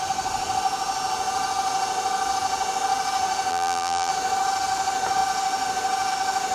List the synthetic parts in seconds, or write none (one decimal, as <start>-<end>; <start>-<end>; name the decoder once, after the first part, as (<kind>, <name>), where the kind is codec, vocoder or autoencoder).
3.5-4.1 (vocoder, BigVGAN v2)